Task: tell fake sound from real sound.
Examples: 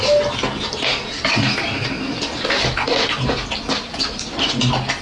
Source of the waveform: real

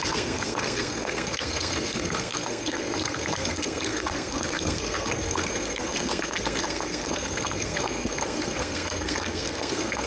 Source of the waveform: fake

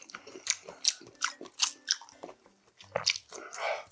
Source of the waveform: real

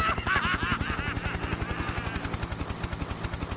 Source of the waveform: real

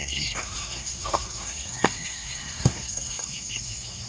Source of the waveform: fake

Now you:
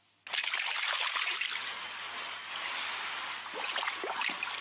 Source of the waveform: real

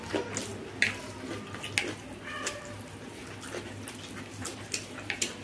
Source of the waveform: real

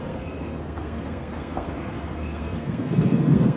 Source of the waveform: fake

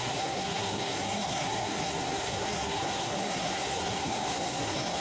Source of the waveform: fake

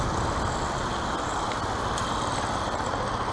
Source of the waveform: real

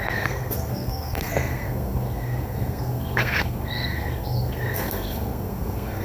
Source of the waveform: fake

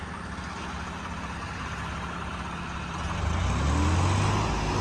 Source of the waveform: real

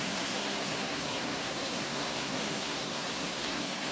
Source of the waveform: fake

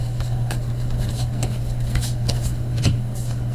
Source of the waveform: fake